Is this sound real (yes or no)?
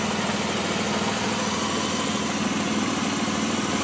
no